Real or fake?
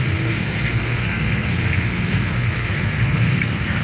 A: fake